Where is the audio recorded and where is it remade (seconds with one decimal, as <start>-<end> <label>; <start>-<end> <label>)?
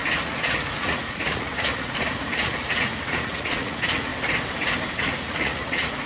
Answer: 0.0-4.1 remade; 4.1-5.0 recorded; 5.0-6.1 remade